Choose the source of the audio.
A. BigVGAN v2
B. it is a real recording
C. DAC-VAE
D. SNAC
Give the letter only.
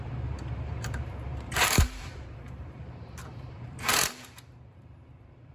A